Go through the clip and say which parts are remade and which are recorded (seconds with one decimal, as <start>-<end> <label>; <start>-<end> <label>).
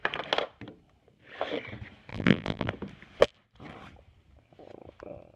0.0-2.1 recorded; 2.1-2.7 remade; 2.7-5.4 recorded